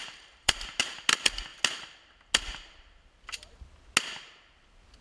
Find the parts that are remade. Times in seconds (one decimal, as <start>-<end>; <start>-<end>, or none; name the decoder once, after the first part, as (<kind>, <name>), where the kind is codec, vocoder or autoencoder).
0.0-0.8 (vocoder, BigVGAN v2)

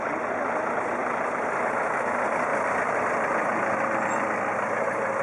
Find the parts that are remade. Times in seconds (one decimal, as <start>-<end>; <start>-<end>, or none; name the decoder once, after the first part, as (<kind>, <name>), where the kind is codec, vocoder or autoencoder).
0.0-1.0 (vocoder, BigVGAN v2); 1.8-5.2